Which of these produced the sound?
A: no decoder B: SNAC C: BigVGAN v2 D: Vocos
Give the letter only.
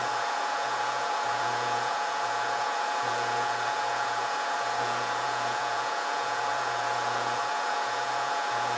D